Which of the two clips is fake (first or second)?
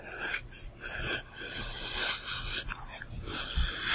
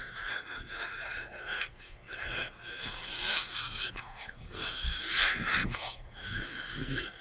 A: second